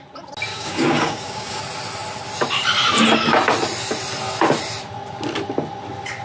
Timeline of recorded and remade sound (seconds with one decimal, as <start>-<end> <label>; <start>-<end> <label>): 0.0-0.5 recorded; 0.5-1.6 remade; 1.6-6.2 recorded